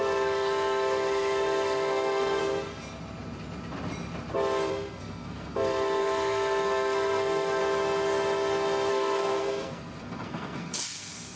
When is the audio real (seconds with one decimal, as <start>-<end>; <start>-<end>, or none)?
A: 2.4-4.7; 7.6-8.9